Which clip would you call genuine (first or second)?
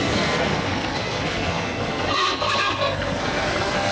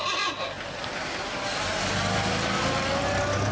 second